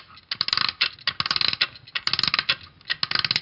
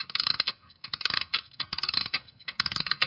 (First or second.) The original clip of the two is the first